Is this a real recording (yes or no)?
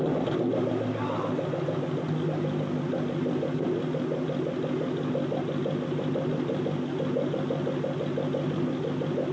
yes